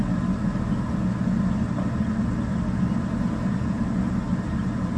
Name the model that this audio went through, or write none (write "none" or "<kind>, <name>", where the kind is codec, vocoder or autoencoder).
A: none